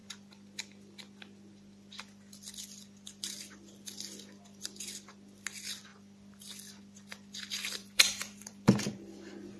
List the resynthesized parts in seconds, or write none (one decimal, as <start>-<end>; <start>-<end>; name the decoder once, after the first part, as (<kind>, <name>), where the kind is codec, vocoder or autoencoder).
7.8-9.1 (vocoder, BigVGAN v2)